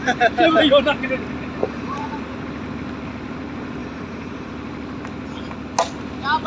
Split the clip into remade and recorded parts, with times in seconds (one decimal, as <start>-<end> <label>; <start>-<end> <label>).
0.0-1.6 recorded; 1.6-2.2 remade; 2.2-3.8 recorded; 3.8-4.5 remade; 4.5-6.5 recorded